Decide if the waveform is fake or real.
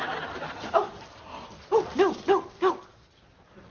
real